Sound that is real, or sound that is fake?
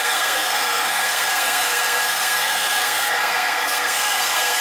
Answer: fake